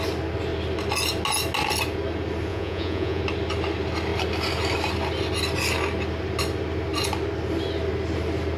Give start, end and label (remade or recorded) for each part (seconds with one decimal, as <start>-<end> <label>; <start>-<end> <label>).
0.0-2.5 recorded; 2.5-3.2 remade; 3.2-8.6 recorded